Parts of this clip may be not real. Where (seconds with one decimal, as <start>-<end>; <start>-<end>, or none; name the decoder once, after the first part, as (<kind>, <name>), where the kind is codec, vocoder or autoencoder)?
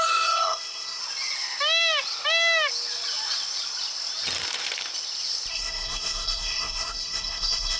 0.0-1.0 (codec, SNAC); 5.5-7.8